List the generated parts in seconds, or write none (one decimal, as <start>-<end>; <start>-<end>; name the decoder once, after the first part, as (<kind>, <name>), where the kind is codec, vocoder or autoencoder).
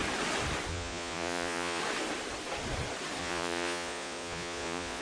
0.7-1.8 (vocoder, Vocos); 3.2-5.0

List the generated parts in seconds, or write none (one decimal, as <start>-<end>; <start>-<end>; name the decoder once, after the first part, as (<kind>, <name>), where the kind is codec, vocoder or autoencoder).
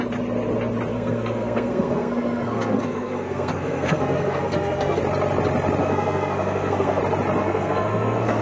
0.9-5.0 (codec, SNAC); 5.8-7.0; 7.4-8.4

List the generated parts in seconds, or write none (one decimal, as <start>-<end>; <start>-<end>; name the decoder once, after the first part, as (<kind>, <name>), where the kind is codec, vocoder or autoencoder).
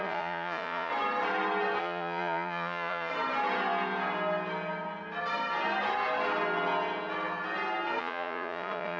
0.0-0.9 (vocoder, Vocos); 1.8-3.1; 8.0-9.0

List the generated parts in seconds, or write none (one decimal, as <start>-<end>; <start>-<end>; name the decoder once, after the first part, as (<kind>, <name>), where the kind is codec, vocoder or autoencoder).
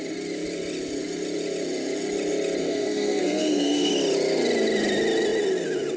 2.6-3.9 (codec, SNAC)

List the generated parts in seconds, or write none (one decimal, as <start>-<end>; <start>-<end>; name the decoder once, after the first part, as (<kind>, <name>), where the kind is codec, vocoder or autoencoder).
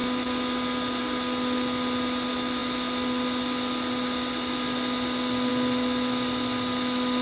none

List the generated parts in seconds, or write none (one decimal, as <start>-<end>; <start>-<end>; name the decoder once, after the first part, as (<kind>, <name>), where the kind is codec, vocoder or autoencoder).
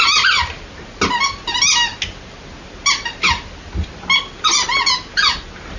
none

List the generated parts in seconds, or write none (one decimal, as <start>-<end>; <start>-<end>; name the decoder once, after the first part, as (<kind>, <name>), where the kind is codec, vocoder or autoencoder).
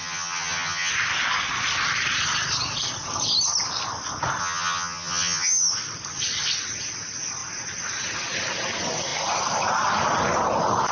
0.0-0.9 (vocoder, HiFi-GAN); 4.4-5.7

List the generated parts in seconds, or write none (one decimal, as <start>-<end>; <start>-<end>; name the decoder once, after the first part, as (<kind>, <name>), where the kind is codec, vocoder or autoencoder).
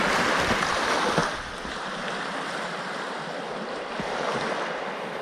none